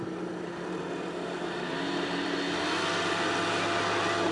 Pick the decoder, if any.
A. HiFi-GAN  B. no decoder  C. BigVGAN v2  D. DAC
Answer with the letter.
B